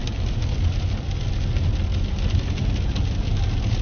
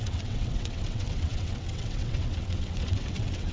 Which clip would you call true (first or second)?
first